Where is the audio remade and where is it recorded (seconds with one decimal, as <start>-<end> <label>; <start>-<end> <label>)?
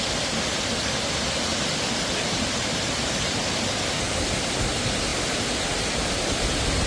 0.0-1.5 recorded; 1.5-4.2 remade; 4.2-6.9 recorded